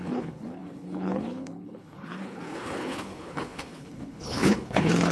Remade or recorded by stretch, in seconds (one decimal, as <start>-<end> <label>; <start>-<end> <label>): 0.0-5.1 remade